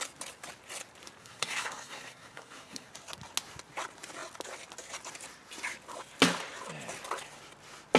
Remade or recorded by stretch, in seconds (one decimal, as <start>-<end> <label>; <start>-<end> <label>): 0.0-1.2 recorded; 1.2-2.9 remade; 2.9-8.0 recorded